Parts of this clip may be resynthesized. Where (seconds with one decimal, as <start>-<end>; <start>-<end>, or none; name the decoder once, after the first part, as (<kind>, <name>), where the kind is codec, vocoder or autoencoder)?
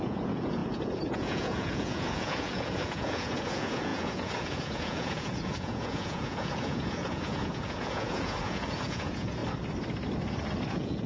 0.0-9.4 (vocoder, Vocos); 10.7-11.1